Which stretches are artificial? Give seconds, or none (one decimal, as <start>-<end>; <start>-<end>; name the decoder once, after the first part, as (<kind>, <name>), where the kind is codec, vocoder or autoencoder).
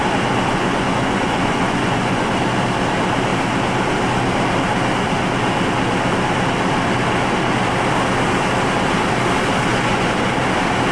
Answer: 0.5-2.3 (vocoder, Vocos); 9.7-10.3